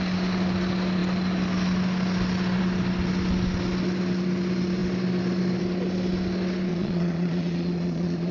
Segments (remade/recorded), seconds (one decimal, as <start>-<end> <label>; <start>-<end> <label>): 0.0-6.7 recorded; 6.7-8.3 remade